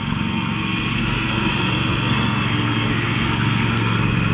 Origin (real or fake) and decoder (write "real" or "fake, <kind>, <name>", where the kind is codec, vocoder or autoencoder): fake, codec, SNAC